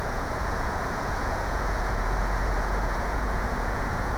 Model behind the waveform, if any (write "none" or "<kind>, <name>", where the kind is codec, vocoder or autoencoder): vocoder, Vocos